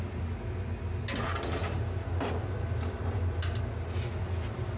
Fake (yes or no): no